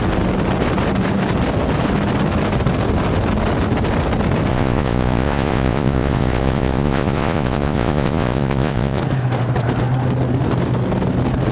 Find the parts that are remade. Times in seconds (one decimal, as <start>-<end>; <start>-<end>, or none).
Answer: 4.5-9.0